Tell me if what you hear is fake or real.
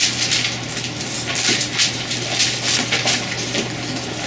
real